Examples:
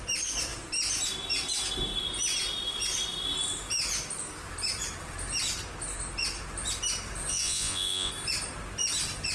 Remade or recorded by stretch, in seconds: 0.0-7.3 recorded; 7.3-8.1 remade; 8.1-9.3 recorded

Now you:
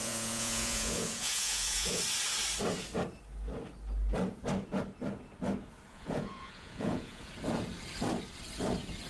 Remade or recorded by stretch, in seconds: 0.0-2.0 remade; 2.0-5.9 recorded; 5.9-7.3 remade; 7.3-9.1 recorded

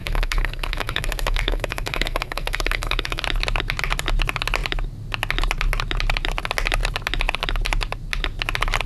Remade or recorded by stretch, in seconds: 0.0-3.2 remade; 3.2-8.9 recorded

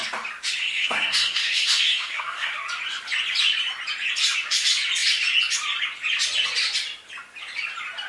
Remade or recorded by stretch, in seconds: 0.0-0.6 recorded; 0.6-2.5 remade; 2.5-8.1 recorded

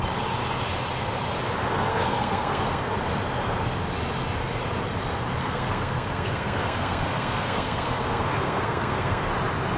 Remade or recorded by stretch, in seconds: 0.0-1.9 recorded; 1.9-2.9 remade; 2.9-5.4 recorded; 5.4-9.3 remade; 9.3-9.8 recorded

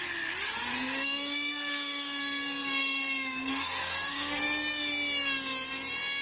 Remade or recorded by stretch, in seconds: 0.0-0.7 recorded; 0.7-4.4 remade; 4.4-6.2 recorded

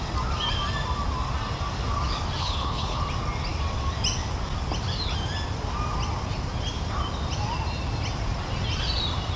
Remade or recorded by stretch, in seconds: 0.0-2.4 recorded; 2.4-3.0 remade; 3.0-9.4 recorded

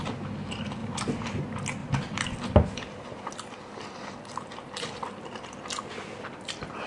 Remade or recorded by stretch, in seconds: 0.0-0.8 recorded; 0.8-1.4 remade; 1.4-1.8 recorded; 1.8-5.8 remade; 5.8-6.9 recorded